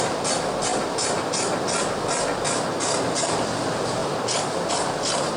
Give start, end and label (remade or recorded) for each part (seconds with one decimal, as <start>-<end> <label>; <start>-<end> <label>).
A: 0.0-5.4 recorded